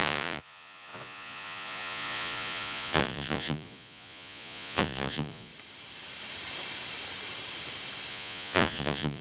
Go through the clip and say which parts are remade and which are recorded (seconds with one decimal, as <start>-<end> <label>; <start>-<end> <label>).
0.0-5.5 remade; 5.5-8.1 recorded; 8.1-9.2 remade

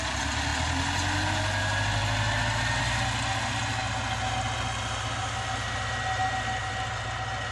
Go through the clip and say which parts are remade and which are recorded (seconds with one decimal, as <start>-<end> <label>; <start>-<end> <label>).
0.0-7.5 recorded

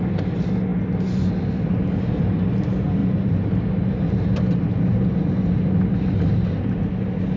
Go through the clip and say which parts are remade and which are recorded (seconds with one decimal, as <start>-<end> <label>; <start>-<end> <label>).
0.0-7.4 recorded

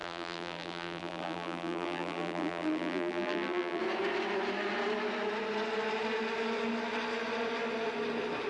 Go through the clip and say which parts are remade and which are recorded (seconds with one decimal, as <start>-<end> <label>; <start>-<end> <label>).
0.0-3.8 remade; 3.8-8.5 recorded